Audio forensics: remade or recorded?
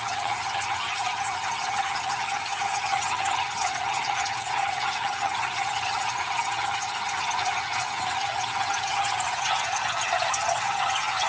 remade